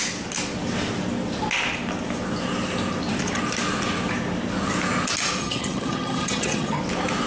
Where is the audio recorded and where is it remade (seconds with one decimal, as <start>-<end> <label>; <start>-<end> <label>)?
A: 0.0-5.4 recorded; 5.4-6.8 remade; 6.8-7.3 recorded